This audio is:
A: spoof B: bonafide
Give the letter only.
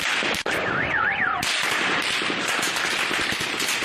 B